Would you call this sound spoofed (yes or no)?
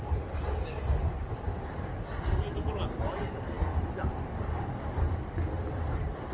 no